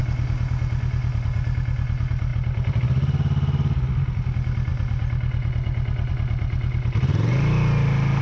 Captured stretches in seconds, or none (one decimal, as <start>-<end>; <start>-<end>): 0.0-8.2